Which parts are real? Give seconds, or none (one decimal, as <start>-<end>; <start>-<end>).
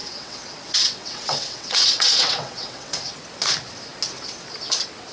3.1-5.1